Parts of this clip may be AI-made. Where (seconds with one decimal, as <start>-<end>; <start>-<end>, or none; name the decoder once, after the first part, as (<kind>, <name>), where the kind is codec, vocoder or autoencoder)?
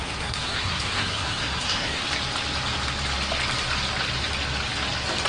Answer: 0.0-2.0 (codec, SNAC)